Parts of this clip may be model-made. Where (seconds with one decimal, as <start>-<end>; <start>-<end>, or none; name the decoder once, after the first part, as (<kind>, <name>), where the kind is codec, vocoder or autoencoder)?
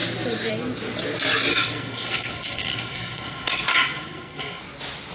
1.5-4.6 (codec, SNAC)